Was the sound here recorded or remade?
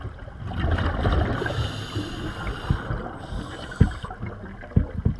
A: recorded